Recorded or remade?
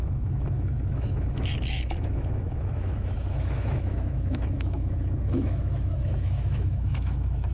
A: remade